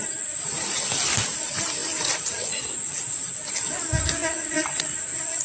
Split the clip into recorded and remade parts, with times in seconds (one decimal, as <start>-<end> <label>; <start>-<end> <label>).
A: 0.0-5.4 recorded